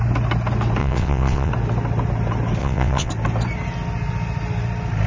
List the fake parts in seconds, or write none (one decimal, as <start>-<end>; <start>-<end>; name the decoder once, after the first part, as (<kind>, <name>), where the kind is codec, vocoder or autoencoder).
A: 0.8-1.5 (vocoder, WaveNeXt); 2.6-3.1